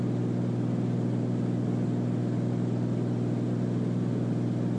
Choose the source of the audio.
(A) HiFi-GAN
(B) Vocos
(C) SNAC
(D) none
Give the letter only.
D